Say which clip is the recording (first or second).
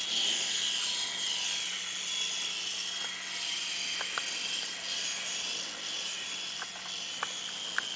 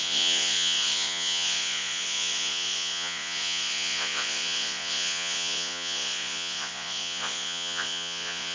first